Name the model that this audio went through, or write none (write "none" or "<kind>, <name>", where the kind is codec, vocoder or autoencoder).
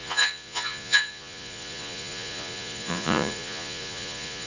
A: vocoder, Vocos